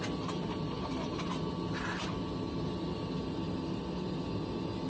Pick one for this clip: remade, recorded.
recorded